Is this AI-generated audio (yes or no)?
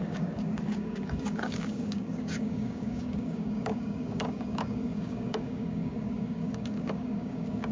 yes